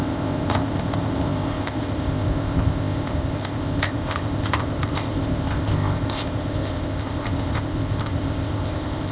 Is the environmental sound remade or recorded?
remade